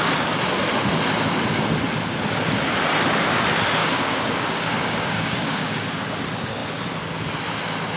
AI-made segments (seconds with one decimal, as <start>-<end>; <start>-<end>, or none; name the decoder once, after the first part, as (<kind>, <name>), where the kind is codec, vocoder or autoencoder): 3.8-6.0 (codec, DAC)